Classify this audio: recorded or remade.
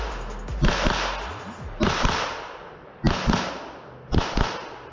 recorded